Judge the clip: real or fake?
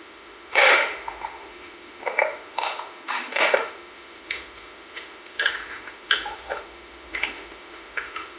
fake